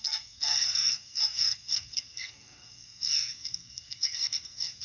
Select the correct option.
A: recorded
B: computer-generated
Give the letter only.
B